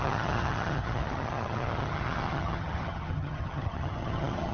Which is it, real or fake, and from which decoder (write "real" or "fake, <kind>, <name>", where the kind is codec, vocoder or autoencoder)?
fake, vocoder, HiFi-GAN